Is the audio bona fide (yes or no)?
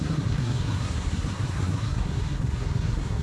no